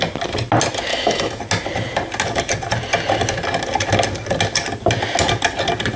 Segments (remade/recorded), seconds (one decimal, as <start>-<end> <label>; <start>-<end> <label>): 0.0-0.9 recorded; 0.9-1.4 remade; 1.4-6.0 recorded